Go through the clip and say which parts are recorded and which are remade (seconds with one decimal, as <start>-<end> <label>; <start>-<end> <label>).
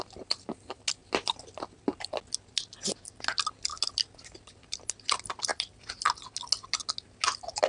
0.0-7.7 recorded